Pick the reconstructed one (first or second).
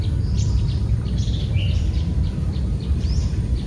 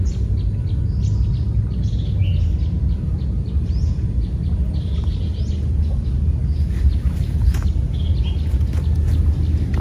first